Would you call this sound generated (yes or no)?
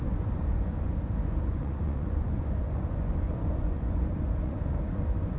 yes